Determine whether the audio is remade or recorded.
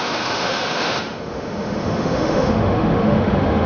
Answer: remade